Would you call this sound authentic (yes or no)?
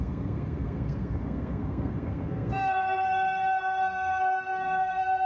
no